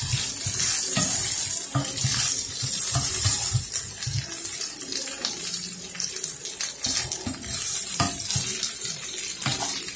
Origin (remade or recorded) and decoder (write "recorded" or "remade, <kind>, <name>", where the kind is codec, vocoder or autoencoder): recorded